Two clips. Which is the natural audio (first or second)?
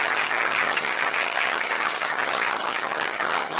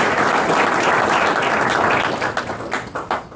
second